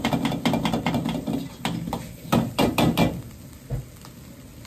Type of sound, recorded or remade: recorded